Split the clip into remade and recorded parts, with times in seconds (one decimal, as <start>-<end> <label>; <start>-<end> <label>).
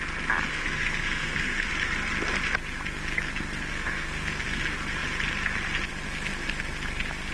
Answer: 0.0-0.5 recorded; 0.5-1.7 remade; 1.7-3.7 recorded; 3.7-4.6 remade; 4.6-7.3 recorded